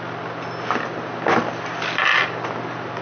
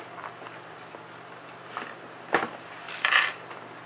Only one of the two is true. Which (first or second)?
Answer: first